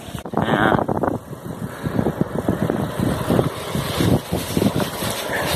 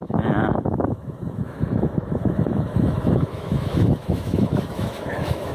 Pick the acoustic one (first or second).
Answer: first